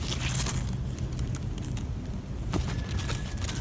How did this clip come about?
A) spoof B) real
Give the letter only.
B